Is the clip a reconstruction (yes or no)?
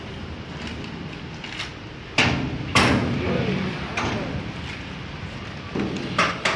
no